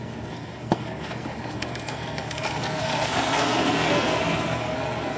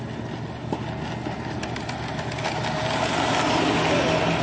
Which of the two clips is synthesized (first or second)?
first